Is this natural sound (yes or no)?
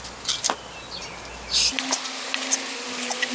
yes